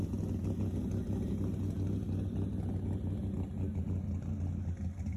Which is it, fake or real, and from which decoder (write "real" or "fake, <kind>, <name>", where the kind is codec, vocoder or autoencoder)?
real